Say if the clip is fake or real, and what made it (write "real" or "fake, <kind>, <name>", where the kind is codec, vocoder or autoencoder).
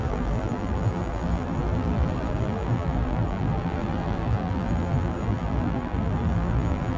fake, vocoder, BigVGAN v2